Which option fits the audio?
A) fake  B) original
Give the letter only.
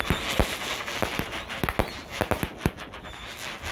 B